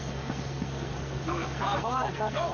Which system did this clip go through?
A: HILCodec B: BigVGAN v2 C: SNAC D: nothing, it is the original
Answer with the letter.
C